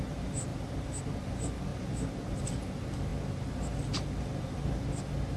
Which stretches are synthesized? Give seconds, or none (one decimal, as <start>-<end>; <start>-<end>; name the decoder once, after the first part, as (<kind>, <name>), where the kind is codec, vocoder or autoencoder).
0.5-1.0 (vocoder, BigVGAN v2); 1.7-2.6